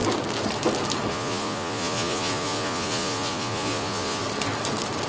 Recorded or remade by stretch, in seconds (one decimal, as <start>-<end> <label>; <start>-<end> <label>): 0.0-1.1 recorded; 1.1-4.2 remade; 4.2-5.1 recorded